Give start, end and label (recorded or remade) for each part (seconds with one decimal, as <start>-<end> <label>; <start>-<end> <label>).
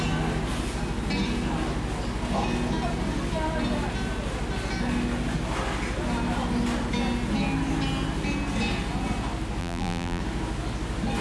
0.0-9.6 recorded; 9.6-10.2 remade; 10.2-11.2 recorded